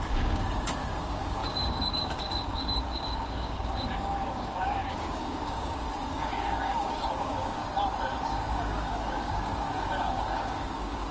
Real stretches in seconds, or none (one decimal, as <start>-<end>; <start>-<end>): 7.6-8.3